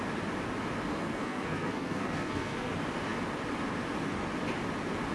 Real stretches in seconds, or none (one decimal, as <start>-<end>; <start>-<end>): 0.0-0.9; 2.7-5.1